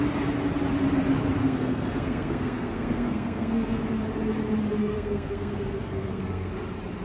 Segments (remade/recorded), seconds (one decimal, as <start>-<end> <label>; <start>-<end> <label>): 0.0-1.4 recorded; 1.4-3.8 remade; 3.8-4.8 recorded; 4.8-6.5 remade; 6.5-7.0 recorded